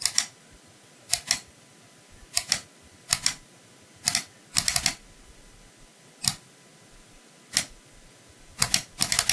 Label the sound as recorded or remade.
recorded